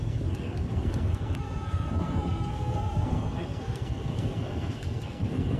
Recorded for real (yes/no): no